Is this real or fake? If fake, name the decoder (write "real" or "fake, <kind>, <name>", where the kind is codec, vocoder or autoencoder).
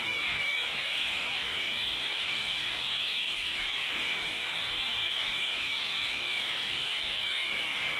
fake, codec, DAC